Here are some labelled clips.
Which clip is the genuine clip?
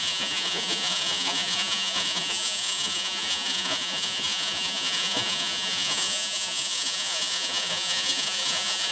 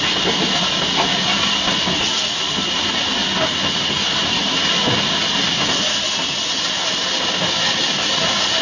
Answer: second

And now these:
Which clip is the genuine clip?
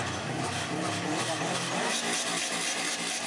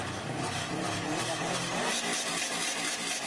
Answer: first